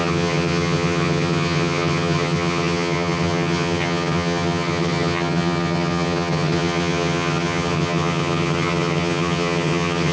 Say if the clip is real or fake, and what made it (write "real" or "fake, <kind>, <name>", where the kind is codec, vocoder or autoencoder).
fake, vocoder, HiFi-GAN